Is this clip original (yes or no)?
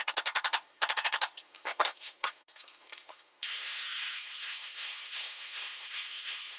no